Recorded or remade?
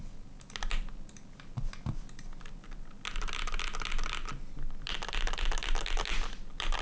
recorded